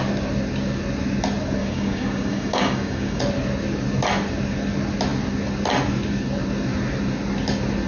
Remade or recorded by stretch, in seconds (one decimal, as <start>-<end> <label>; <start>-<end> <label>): 0.0-1.6 recorded; 1.6-3.2 remade; 3.2-7.9 recorded